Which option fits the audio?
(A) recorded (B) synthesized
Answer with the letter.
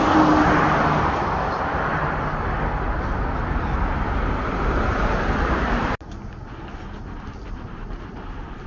A